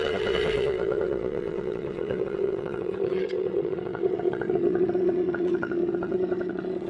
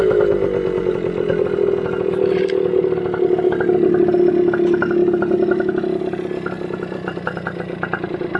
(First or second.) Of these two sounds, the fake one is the first